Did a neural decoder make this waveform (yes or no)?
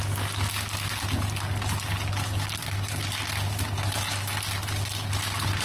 no